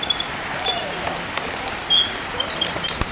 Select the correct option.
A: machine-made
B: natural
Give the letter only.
B